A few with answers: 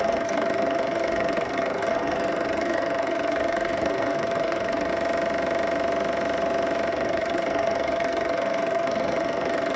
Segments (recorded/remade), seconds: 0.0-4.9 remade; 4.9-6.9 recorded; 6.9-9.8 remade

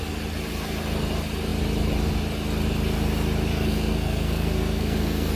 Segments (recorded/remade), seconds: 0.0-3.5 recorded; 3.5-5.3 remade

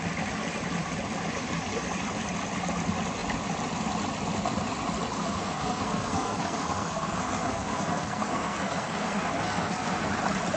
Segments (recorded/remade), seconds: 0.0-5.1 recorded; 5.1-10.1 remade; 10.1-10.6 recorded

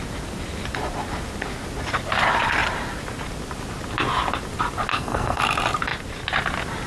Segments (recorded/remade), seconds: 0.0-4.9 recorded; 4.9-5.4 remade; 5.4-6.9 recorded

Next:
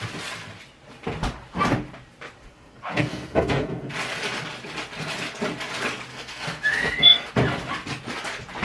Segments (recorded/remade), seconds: 0.0-2.4 recorded; 2.4-3.9 remade; 3.9-6.1 recorded; 6.1-7.3 remade; 7.3-8.6 recorded

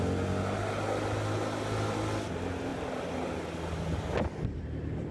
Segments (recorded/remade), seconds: 0.0-5.1 recorded

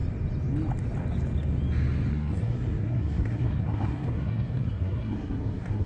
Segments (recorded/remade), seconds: 0.0-2.1 recorded; 2.1-5.9 remade

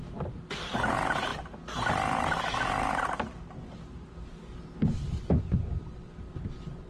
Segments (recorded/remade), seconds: 0.0-6.9 recorded